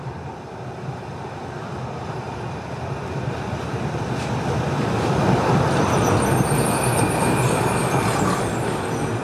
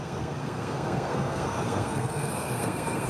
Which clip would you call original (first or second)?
first